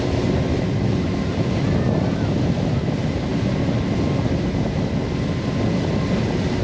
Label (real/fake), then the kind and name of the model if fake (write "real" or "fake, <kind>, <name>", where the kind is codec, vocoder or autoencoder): real